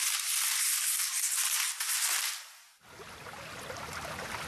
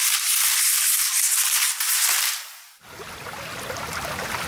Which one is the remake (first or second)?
second